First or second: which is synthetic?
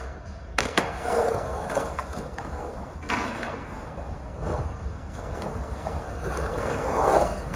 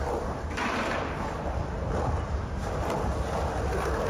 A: first